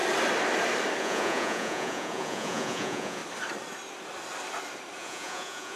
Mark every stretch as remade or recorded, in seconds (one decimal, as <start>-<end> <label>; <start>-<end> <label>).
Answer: 0.0-1.0 recorded; 1.0-3.2 remade; 3.2-5.0 recorded; 5.0-5.8 remade